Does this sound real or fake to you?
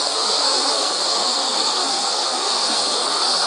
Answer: fake